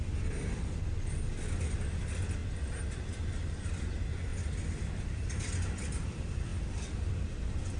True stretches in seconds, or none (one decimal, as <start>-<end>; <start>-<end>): 0.0-4.3; 5.4-6.5; 7.2-7.8